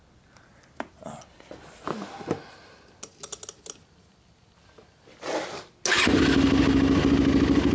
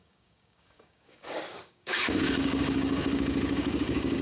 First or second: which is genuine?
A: first